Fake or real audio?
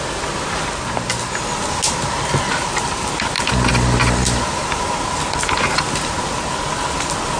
real